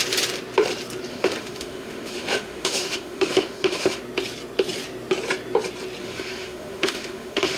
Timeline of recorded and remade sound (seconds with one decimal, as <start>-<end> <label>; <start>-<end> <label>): 0.0-1.1 recorded; 1.1-4.0 remade; 4.0-6.0 recorded; 6.0-7.6 remade

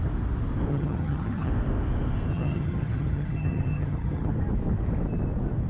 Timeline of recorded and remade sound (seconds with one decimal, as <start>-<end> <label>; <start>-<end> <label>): 0.0-0.7 recorded; 0.7-1.5 remade; 1.5-2.3 recorded; 2.3-4.3 remade; 4.3-5.7 recorded

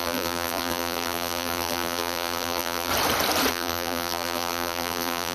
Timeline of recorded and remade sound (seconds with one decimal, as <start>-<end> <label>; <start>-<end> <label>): 0.0-2.9 remade; 2.9-3.5 recorded; 3.5-5.3 remade

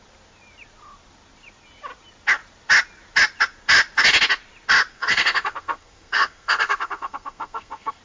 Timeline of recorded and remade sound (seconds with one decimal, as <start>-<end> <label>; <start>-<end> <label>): 0.0-4.9 recorded; 4.9-8.0 remade

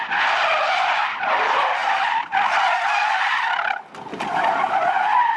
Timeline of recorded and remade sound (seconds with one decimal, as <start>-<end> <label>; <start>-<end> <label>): 0.0-5.4 recorded

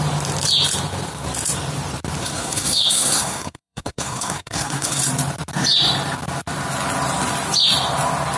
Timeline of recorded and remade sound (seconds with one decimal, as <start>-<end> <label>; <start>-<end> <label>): 0.0-2.2 recorded; 2.2-5.0 remade; 5.0-8.4 recorded

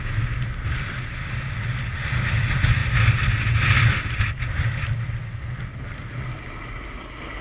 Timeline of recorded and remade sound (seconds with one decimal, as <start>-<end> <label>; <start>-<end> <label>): 0.0-7.4 recorded